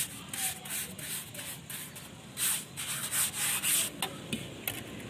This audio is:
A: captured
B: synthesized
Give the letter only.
A